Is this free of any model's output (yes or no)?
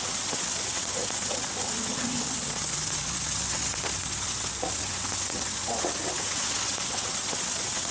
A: no